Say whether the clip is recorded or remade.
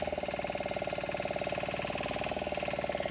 recorded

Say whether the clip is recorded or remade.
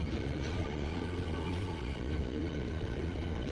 remade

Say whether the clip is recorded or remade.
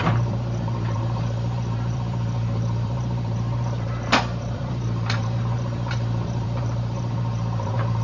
remade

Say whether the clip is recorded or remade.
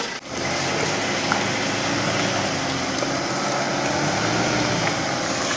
recorded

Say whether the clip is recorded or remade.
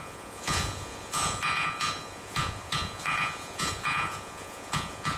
remade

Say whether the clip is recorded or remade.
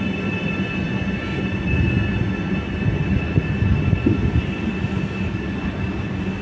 recorded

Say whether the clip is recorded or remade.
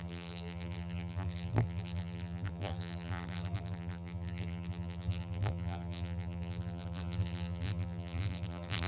remade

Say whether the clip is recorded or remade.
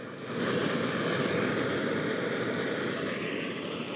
recorded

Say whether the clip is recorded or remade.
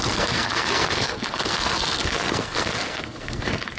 remade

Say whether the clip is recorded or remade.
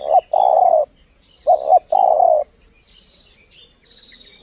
recorded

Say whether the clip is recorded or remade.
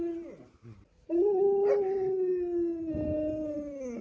recorded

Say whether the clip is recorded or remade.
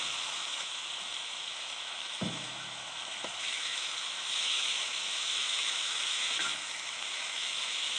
remade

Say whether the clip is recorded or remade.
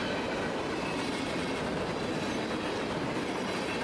recorded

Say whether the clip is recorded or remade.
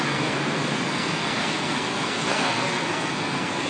remade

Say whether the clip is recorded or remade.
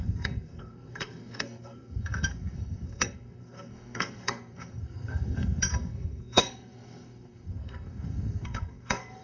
remade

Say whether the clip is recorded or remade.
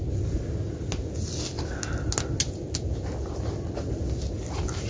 recorded